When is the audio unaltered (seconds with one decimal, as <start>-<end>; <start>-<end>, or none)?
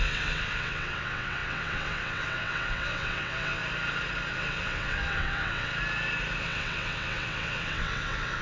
3.6-4.3; 5.7-6.4